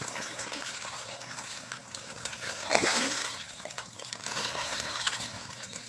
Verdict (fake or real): fake